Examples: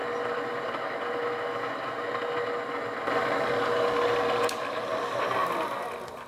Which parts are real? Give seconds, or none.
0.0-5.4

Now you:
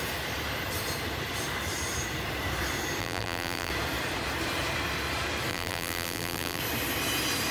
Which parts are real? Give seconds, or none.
0.0-3.0; 3.7-5.5; 6.6-7.5